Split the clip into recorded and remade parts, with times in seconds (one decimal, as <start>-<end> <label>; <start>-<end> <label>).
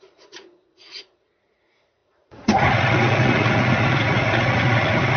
0.0-5.2 remade